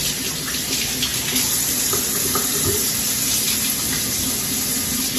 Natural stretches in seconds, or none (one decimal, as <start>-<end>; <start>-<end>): 0.0-5.2